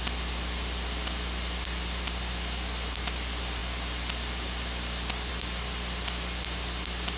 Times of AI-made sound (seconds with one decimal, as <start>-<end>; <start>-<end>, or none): none